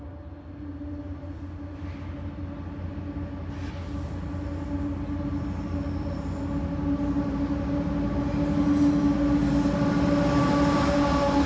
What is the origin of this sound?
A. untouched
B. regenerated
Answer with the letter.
A